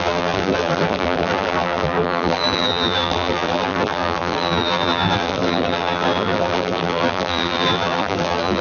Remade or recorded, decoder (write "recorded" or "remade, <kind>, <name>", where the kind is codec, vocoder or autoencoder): remade, vocoder, BigVGAN v2